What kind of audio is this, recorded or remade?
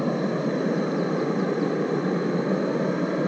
recorded